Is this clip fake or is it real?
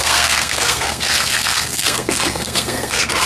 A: fake